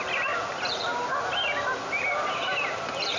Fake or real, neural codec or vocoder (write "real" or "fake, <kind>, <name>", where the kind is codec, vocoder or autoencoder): real